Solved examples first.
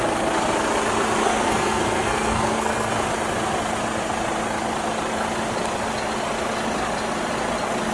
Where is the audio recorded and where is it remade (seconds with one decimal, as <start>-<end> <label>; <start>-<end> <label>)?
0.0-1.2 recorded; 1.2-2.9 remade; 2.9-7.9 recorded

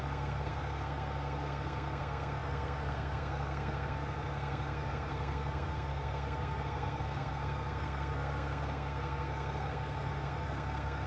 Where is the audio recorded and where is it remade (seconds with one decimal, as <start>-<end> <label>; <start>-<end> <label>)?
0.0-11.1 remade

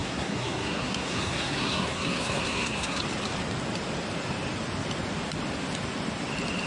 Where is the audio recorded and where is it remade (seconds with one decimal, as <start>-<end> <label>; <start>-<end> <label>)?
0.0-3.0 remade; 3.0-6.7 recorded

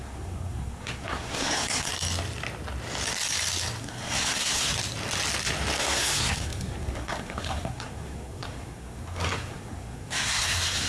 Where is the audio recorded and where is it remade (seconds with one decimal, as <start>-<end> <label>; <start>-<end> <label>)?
0.0-1.9 remade; 1.9-3.8 recorded; 3.8-4.7 remade; 4.7-5.8 recorded; 5.8-10.9 remade